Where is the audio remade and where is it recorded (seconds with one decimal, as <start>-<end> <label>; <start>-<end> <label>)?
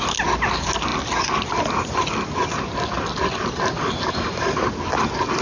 0.0-5.4 recorded